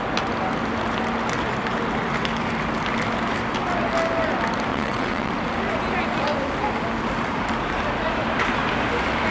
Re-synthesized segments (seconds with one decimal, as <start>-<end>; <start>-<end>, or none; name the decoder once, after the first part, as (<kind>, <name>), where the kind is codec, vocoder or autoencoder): 4.7-5.3 (vocoder, WaveNeXt)